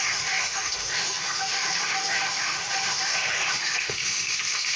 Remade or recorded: remade